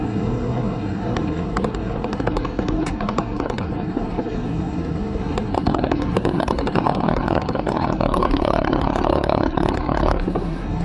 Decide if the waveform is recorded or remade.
remade